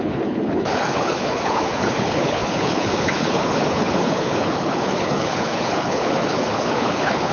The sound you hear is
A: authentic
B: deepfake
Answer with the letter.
B